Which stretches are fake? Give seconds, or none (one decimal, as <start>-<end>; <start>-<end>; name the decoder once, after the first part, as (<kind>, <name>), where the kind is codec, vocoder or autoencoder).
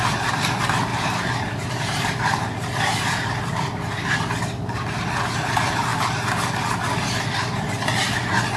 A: 0.9-4.4 (vocoder, BigVGAN v2)